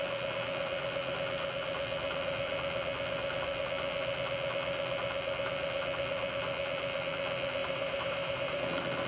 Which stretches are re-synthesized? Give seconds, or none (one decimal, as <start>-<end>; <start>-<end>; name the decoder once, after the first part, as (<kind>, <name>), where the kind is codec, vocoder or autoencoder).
7.6-8.6 (vocoder, BigVGAN v2)